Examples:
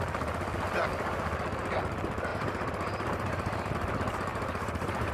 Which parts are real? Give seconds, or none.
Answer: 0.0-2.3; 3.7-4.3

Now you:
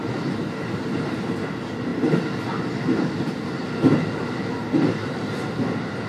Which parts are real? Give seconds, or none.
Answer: 0.0-6.1

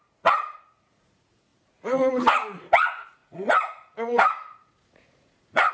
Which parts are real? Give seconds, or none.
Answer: none

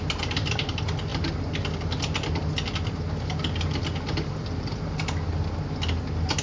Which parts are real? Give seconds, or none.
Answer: 0.0-6.4

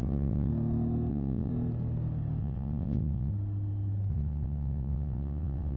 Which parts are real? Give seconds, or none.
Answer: 0.5-1.1; 1.5-2.4; 3.3-4.1